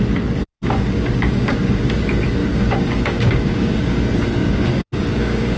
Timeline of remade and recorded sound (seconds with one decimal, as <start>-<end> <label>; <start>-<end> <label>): 0.0-0.5 recorded; 0.5-1.9 remade; 1.9-2.4 recorded; 2.4-4.0 remade; 4.0-4.4 recorded; 4.4-5.6 remade